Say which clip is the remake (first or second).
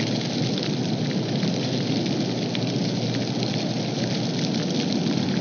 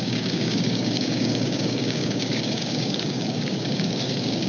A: second